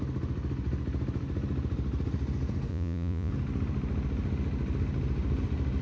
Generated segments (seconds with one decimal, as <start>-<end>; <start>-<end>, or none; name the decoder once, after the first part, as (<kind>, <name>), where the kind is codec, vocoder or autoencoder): 2.7-3.3 (vocoder, Vocos)